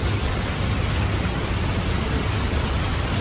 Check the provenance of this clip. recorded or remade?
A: recorded